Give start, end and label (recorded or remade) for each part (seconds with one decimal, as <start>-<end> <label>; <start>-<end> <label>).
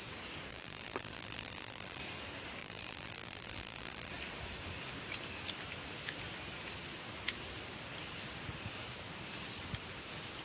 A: 0.0-0.5 recorded; 0.5-2.0 remade; 2.0-2.6 recorded; 2.6-4.1 remade; 4.1-10.4 recorded